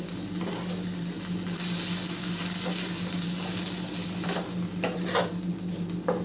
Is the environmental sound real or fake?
real